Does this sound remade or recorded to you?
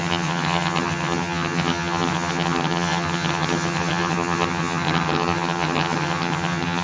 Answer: remade